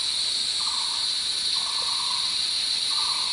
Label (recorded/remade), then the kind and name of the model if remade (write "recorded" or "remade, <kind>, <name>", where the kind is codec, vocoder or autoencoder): recorded